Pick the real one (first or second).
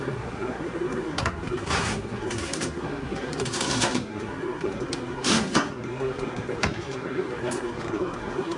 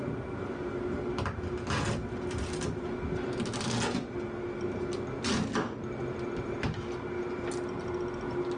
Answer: second